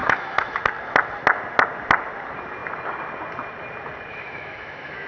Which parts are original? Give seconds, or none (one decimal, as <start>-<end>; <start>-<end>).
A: 0.6-4.1